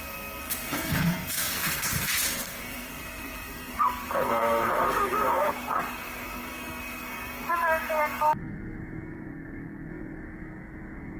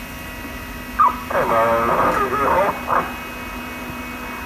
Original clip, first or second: second